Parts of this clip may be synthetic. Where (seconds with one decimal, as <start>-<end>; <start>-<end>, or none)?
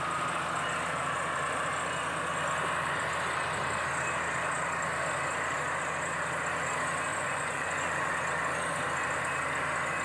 7.1-8.1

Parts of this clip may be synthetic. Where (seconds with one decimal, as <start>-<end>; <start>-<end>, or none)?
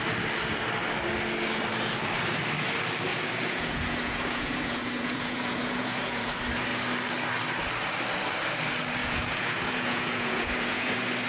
3.1-6.3; 9.0-10.9